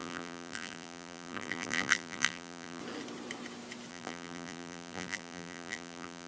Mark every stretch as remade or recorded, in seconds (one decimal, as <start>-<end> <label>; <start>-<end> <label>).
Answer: 0.0-2.8 remade; 2.8-3.9 recorded; 3.9-6.3 remade